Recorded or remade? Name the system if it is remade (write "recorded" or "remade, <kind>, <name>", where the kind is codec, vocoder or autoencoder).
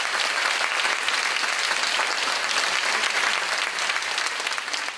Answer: recorded